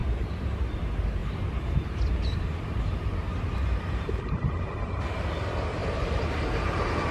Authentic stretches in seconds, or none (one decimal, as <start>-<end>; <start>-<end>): 0.7-1.2; 5.2-5.8